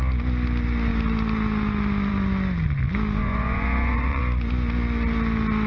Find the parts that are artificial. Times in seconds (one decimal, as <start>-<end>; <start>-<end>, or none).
3.2-4.2